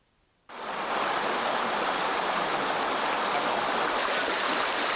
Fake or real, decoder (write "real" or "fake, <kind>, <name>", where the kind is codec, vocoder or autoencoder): real